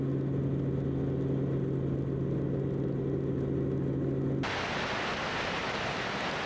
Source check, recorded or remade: recorded